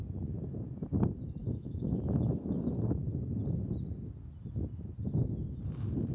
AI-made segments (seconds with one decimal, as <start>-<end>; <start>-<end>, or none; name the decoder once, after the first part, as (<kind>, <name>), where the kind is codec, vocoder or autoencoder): 1.4-2.4 (autoencoder, DAC-VAE)